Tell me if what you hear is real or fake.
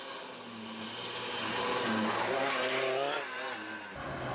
real